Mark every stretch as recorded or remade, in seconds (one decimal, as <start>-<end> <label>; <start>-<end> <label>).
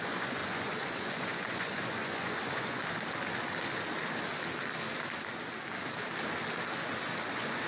0.0-2.8 remade; 2.8-7.3 recorded; 7.3-7.7 remade